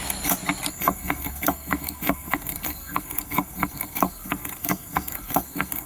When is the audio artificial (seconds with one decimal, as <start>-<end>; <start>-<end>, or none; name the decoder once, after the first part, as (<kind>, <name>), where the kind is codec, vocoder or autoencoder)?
0.7-5.9 (codec, SNAC)